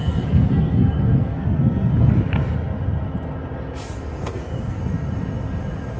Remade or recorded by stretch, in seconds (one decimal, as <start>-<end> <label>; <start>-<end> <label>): 0.0-2.1 remade; 2.1-4.2 recorded; 4.2-4.8 remade; 4.8-6.0 recorded